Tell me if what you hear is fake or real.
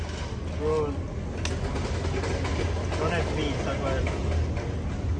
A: real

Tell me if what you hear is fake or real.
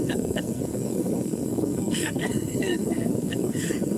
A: fake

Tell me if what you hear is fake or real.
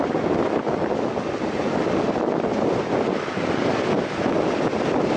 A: real